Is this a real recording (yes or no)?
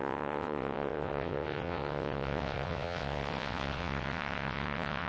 no